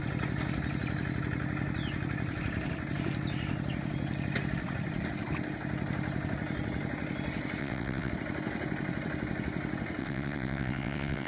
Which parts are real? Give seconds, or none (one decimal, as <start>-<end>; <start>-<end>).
0.0-7.6; 8.1-10.0